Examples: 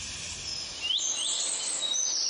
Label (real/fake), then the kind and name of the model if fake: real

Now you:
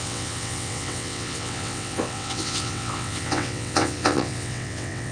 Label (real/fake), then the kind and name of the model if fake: fake, vocoder, WaveNeXt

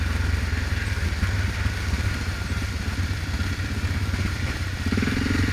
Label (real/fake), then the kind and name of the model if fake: real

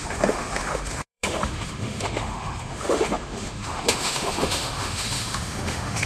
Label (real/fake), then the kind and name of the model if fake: fake, autoencoder, DAC-VAE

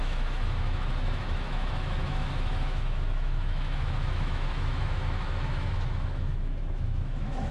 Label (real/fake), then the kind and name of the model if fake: fake, autoencoder, DAC-VAE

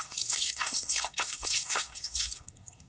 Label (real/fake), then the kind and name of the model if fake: fake, codec, SNAC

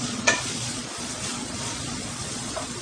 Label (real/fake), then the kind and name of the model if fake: fake, vocoder, Vocos